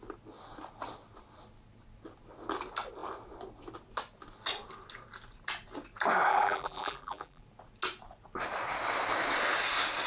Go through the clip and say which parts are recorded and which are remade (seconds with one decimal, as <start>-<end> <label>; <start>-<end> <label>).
0.0-6.3 recorded; 6.3-7.4 remade; 7.4-10.1 recorded